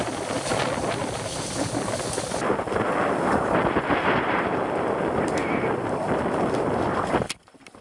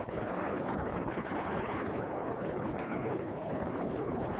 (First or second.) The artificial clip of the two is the second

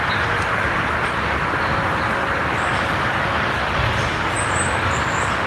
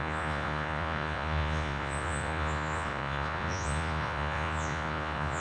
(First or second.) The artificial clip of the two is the second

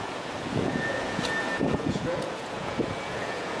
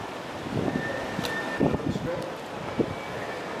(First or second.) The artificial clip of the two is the first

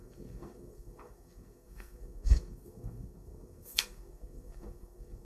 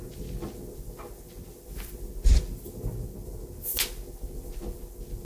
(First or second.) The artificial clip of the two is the first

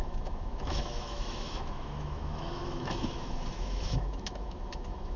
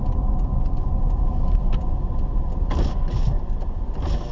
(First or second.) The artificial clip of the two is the first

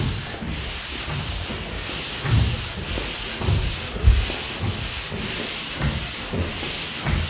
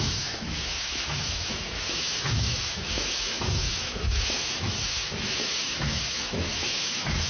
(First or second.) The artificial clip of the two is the second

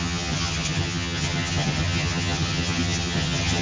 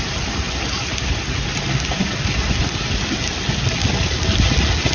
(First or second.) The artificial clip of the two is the first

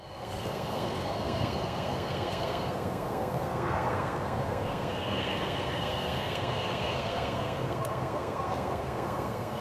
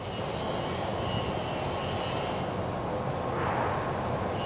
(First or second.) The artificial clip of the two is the first